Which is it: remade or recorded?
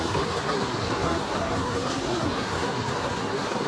remade